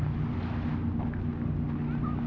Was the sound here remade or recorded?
recorded